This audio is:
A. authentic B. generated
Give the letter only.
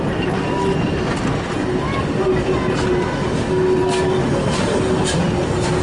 A